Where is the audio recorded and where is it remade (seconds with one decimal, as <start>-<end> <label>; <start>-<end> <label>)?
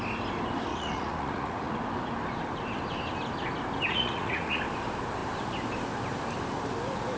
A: 0.0-0.7 recorded; 0.7-1.8 remade; 1.8-3.9 recorded; 3.9-4.6 remade; 4.6-7.2 recorded